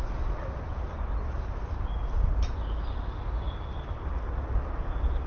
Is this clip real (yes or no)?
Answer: yes